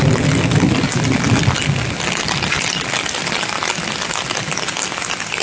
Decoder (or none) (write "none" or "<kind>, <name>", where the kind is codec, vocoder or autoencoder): none